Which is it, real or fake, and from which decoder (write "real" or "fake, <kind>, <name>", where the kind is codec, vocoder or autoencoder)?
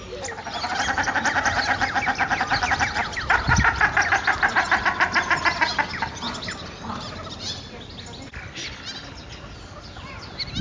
real